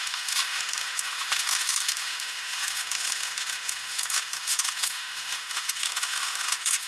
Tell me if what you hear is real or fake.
fake